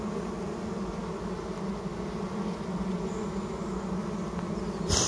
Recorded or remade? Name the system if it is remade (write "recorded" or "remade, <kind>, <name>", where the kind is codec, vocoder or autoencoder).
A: recorded